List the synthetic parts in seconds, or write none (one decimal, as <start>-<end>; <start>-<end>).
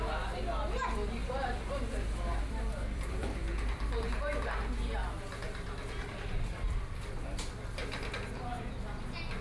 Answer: 1.2-1.8; 2.3-4.8